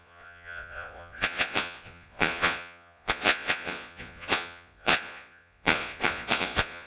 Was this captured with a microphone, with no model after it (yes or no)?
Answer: no